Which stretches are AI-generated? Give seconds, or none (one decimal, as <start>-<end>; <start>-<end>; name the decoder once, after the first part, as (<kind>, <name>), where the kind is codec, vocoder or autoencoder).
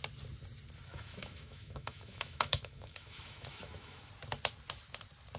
0.9-4.1 (autoencoder, DAC-VAE)